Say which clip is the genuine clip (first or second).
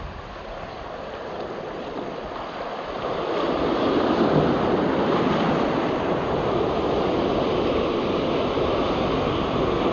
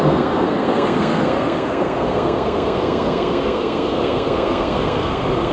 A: first